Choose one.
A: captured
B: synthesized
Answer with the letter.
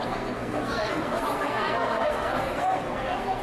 B